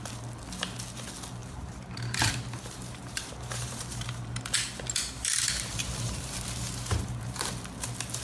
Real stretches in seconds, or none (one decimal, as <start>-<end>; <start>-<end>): 0.0-1.4; 4.2-5.2; 7.5-8.2